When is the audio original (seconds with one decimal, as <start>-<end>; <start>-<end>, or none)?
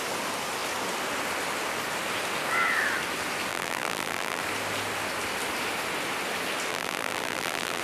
0.0-3.5; 4.4-6.7